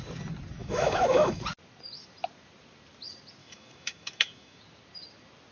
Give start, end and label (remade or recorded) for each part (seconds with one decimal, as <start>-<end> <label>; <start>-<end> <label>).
0.0-0.6 recorded; 0.6-1.4 remade; 1.4-3.4 recorded; 3.4-4.6 remade; 4.6-5.5 recorded